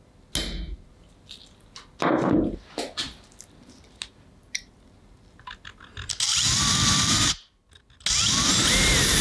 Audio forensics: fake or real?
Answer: real